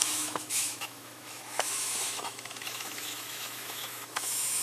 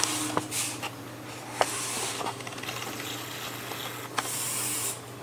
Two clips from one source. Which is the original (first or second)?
second